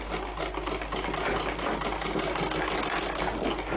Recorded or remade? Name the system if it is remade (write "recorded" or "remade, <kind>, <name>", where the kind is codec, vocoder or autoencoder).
recorded